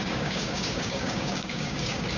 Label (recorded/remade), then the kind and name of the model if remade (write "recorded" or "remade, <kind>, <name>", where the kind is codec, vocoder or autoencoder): remade, codec, DAC